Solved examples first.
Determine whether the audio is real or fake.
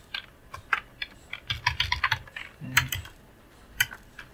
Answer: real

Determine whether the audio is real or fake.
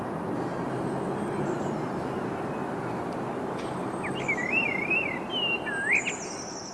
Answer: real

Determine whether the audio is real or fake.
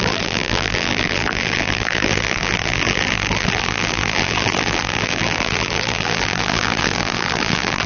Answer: fake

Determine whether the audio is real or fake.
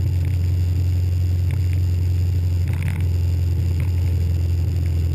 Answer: real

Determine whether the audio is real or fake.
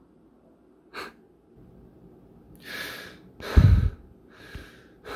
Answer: real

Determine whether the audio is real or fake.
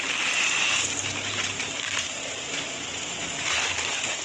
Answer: fake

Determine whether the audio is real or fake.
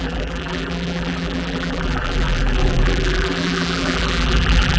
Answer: fake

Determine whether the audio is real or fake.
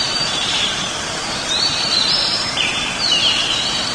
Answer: fake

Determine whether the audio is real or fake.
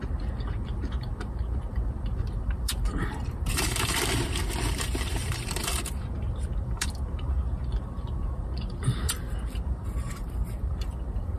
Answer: fake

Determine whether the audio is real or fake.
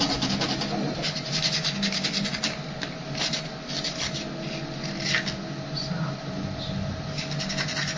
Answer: real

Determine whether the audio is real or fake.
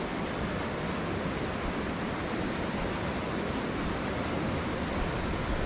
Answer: real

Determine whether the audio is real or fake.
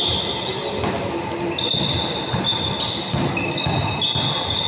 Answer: real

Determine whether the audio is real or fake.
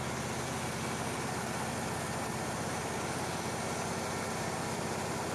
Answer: real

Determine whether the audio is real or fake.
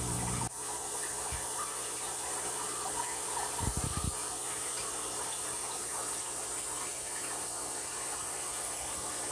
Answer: real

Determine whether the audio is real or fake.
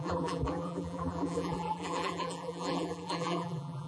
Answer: fake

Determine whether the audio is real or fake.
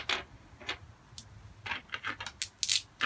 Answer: real